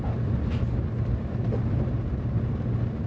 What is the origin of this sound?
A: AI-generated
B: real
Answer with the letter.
B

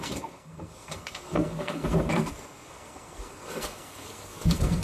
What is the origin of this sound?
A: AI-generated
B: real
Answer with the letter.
A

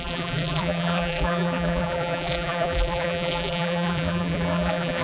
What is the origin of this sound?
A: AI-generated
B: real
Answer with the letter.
A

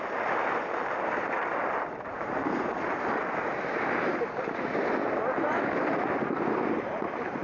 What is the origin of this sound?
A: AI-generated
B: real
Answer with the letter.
B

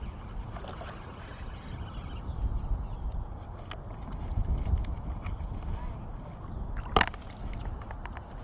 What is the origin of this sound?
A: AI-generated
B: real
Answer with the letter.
B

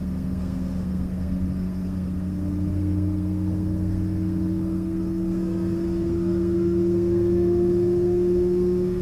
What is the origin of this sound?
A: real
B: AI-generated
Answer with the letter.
B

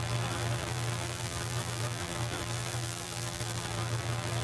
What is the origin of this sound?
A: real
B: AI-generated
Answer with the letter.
B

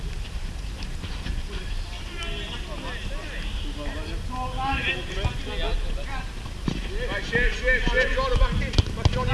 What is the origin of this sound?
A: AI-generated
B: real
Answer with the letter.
B